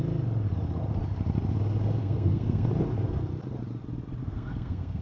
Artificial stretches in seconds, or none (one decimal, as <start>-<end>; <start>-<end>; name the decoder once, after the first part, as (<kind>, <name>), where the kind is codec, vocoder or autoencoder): 2.0-2.7 (codec, SNAC); 4.2-5.0